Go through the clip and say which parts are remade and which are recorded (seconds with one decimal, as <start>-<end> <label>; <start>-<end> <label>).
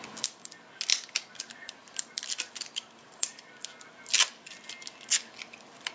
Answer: 0.0-0.9 recorded; 0.9-4.1 remade; 4.1-5.9 recorded